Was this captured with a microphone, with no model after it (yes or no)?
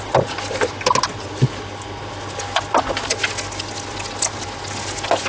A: yes